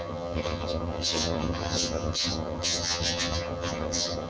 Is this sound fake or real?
fake